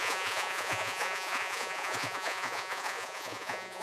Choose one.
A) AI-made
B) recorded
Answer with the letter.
A